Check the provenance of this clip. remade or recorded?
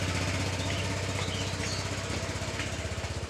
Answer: recorded